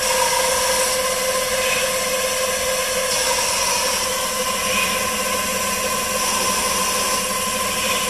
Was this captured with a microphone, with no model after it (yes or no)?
yes